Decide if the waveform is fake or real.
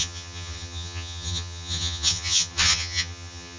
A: fake